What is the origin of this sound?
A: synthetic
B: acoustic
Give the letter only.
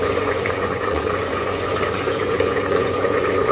A